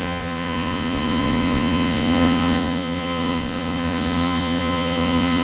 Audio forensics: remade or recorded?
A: remade